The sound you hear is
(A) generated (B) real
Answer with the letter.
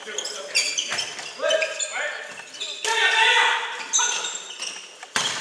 B